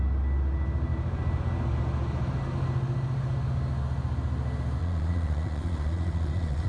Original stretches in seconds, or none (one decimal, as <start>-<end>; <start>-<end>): 0.0-4.8